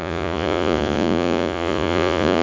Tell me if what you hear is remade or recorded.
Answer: remade